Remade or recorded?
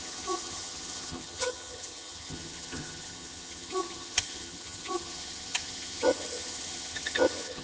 remade